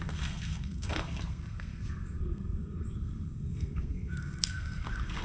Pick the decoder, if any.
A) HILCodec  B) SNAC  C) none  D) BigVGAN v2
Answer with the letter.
B